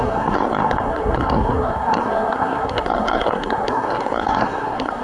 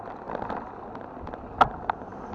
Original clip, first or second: second